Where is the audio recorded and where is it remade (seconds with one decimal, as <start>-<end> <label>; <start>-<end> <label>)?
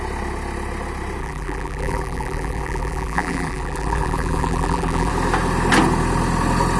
0.0-1.2 recorded; 1.2-5.1 remade; 5.1-6.8 recorded